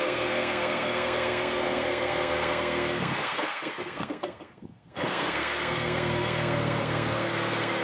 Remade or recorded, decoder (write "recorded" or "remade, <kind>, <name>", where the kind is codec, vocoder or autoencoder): remade, codec, SNAC